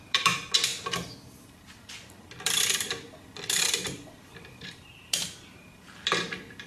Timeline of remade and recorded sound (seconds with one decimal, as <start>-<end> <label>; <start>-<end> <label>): 0.0-0.7 remade; 0.7-1.3 recorded; 1.3-6.7 remade